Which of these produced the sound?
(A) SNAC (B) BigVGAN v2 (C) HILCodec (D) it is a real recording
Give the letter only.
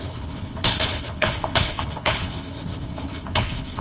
C